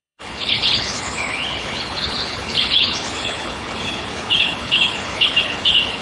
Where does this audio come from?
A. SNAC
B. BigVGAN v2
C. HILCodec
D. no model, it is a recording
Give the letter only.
C